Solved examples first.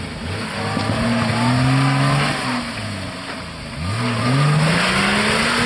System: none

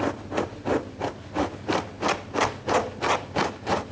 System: none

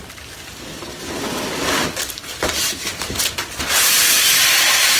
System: none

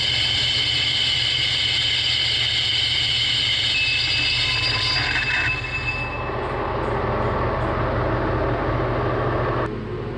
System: none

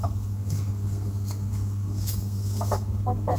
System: codec, SNAC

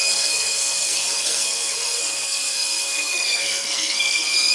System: codec, SNAC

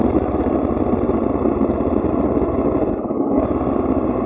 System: none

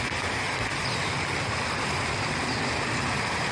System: none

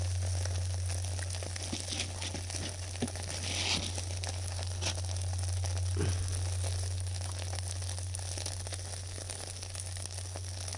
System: none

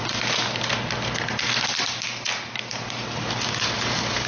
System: none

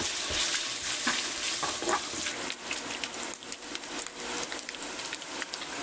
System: none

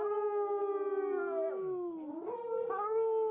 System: none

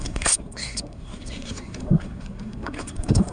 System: codec, SNAC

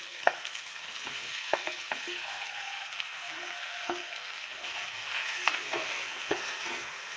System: codec, SNAC